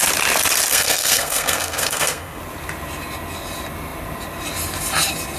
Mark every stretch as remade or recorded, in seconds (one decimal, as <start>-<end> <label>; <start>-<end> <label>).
0.0-0.7 recorded; 0.7-2.4 remade; 2.4-5.4 recorded